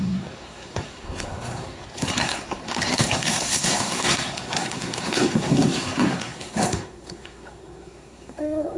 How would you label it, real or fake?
fake